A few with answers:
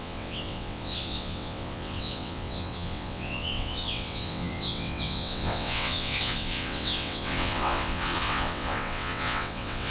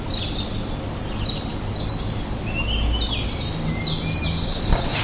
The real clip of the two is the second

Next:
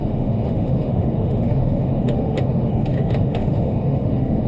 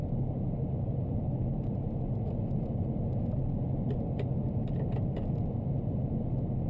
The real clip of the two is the second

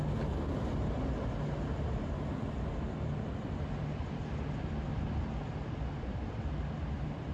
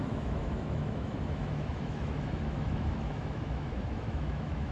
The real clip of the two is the first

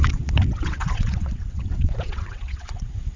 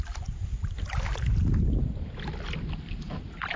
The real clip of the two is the second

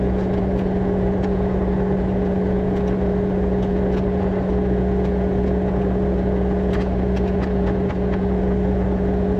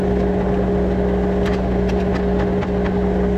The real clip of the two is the second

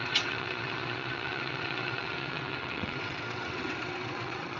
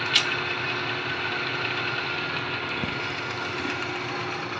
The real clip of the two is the second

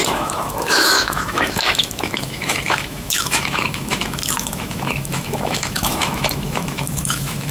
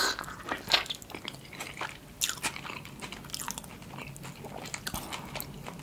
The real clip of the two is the second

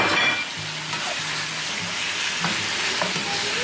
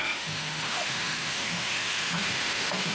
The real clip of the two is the first